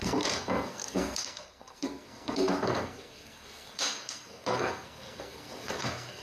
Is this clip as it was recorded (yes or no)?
no